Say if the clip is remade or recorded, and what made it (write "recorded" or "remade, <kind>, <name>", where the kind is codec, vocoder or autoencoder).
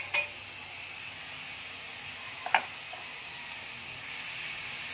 recorded